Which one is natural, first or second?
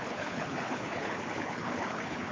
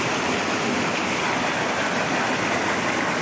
second